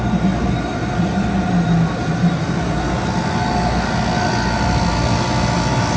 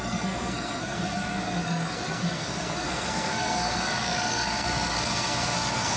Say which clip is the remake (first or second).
second